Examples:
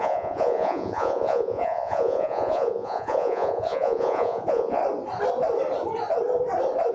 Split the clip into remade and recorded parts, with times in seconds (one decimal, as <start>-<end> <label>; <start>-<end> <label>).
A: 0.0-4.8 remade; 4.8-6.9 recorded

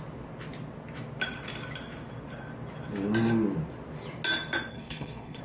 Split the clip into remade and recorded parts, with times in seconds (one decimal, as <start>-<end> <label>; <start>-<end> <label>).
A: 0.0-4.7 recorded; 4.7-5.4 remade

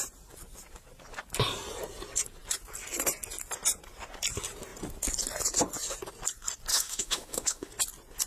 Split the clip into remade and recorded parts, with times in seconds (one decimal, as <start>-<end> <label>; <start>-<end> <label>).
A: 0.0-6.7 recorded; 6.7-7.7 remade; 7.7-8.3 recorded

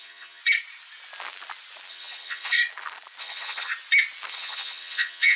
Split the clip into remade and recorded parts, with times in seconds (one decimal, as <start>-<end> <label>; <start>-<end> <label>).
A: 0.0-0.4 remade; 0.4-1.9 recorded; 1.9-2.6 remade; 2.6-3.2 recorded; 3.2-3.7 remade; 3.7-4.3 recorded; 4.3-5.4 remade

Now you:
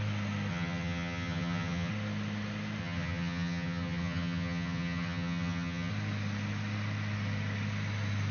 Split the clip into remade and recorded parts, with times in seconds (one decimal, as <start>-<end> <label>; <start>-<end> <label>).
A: 0.0-0.5 recorded; 0.5-1.9 remade; 1.9-2.8 recorded; 2.8-5.9 remade; 5.9-8.3 recorded

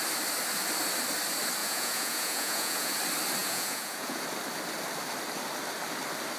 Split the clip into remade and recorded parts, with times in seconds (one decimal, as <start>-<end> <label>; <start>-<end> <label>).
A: 0.0-1.6 recorded; 1.6-2.9 remade; 2.9-3.4 recorded; 3.4-4.2 remade; 4.2-6.4 recorded

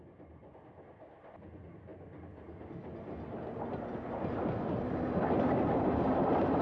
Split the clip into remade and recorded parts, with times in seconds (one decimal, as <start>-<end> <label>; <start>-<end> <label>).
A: 0.0-6.6 recorded